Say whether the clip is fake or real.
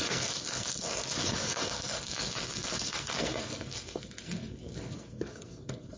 fake